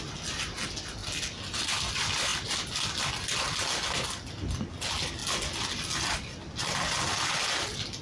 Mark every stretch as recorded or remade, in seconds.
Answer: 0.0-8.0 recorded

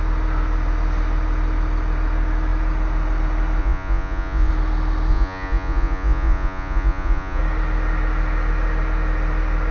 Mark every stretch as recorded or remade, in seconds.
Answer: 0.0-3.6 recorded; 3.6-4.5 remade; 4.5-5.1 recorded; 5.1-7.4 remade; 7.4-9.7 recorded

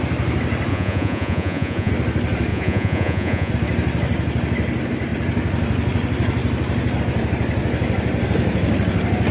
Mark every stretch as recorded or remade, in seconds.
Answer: 0.0-0.7 recorded; 0.7-1.9 remade; 1.9-2.5 recorded; 2.5-3.5 remade; 3.5-9.3 recorded